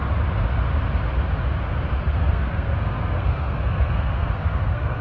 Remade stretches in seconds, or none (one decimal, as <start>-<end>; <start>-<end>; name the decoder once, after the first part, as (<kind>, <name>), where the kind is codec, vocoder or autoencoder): 1.9-5.0 (codec, SNAC)